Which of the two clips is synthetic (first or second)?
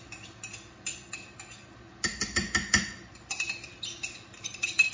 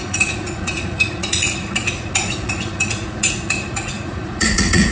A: second